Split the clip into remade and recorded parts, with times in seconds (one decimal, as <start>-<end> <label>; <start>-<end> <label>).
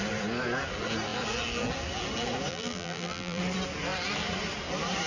0.0-2.5 recorded; 2.5-3.4 remade; 3.4-5.1 recorded